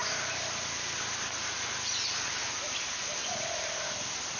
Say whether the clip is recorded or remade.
recorded